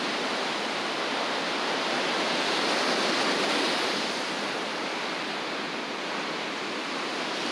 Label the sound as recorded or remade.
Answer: recorded